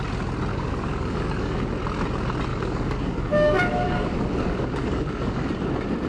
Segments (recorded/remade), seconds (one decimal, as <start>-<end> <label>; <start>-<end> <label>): 0.0-0.5 recorded; 0.5-1.7 remade; 1.7-2.5 recorded; 2.5-5.5 remade; 5.5-6.1 recorded